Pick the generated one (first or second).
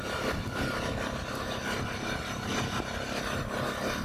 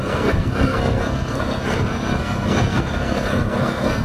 second